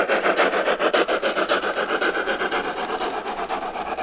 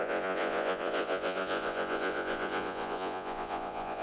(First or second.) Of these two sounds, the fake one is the second